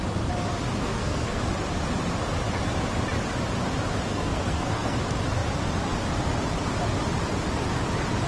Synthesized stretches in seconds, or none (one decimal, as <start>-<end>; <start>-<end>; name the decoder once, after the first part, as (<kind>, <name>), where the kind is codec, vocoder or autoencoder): 0.8-1.4 (codec, SNAC); 4.1-5.0